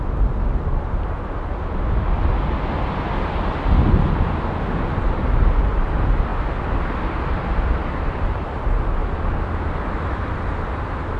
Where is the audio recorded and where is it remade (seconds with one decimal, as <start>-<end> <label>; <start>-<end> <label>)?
0.0-9.0 recorded; 9.0-11.2 remade